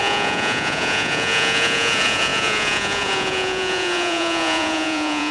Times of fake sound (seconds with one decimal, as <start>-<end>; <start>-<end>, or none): 0.0-5.3